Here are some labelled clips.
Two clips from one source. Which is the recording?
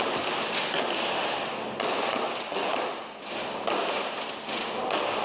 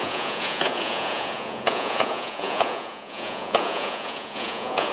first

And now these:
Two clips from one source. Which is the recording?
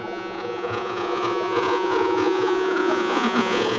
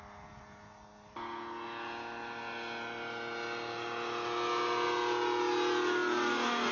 second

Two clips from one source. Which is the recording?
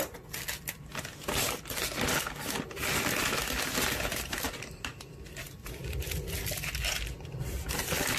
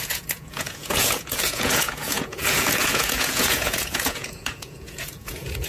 first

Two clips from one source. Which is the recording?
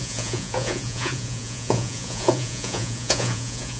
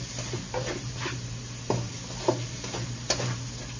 second